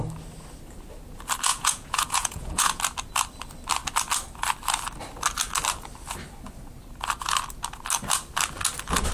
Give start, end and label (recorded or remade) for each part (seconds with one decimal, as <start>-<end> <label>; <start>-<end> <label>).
0.0-1.5 recorded; 1.5-2.8 remade; 2.8-9.1 recorded